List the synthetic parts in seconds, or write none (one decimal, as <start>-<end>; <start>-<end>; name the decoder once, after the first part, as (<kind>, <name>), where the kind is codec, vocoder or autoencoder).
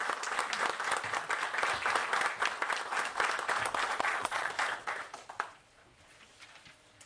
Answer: 3.9-4.5 (vocoder, Vocos)